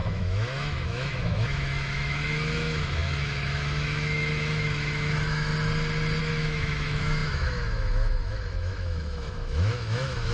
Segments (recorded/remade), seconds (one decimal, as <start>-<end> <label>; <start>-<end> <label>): 0.0-5.5 remade; 5.5-6.2 recorded; 6.2-10.3 remade